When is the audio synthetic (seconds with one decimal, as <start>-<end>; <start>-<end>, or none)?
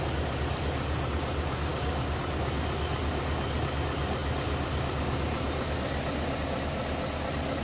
1.7-2.2